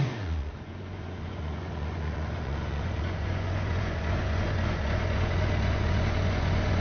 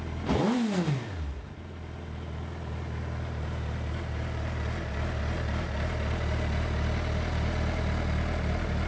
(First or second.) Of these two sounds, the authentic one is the second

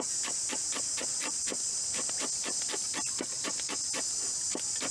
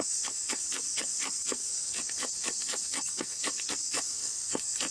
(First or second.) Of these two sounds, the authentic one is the first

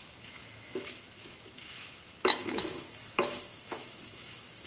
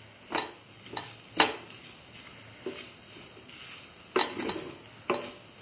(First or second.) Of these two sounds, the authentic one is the second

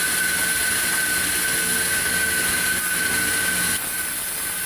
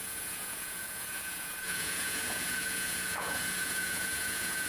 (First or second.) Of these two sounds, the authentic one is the first